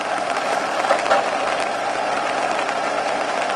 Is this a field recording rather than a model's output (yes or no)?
no